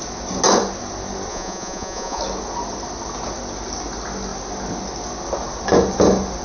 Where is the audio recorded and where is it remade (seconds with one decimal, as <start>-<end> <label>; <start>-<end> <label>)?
0.0-1.3 recorded; 1.3-2.2 remade; 2.2-6.4 recorded

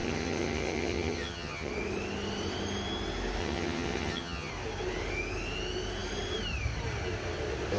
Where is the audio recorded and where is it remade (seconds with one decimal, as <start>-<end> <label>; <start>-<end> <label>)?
0.0-1.7 remade; 1.7-3.4 recorded; 3.4-4.5 remade; 4.5-7.8 recorded

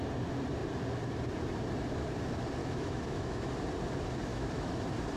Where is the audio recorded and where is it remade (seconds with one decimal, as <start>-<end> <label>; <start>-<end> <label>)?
0.0-2.6 recorded; 2.6-3.4 remade; 3.4-4.3 recorded; 4.3-4.8 remade; 4.8-5.2 recorded

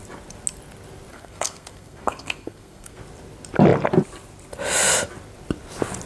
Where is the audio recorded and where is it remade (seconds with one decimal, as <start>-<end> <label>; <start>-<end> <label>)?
0.0-1.1 recorded; 1.1-3.0 remade; 3.0-6.1 recorded

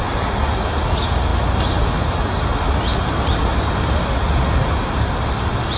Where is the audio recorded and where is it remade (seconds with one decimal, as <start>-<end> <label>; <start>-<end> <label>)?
0.0-5.8 recorded

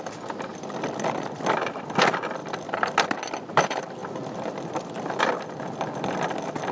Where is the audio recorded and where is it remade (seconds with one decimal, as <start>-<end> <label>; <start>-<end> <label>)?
0.0-0.5 recorded; 0.5-1.8 remade; 1.8-2.4 recorded; 2.4-3.2 remade; 3.2-6.7 recorded

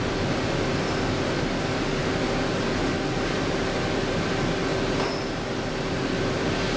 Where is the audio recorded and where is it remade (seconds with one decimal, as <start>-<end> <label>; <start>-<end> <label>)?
0.0-6.8 recorded